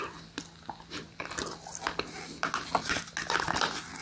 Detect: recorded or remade recorded